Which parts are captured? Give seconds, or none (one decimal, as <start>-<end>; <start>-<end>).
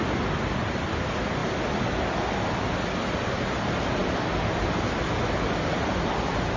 0.0-6.6